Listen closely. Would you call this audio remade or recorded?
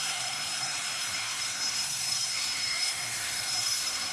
remade